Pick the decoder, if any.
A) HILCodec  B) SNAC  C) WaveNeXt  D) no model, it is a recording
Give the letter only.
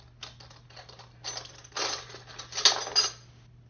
D